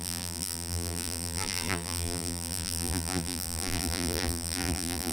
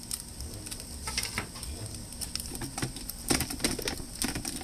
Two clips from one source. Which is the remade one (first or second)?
first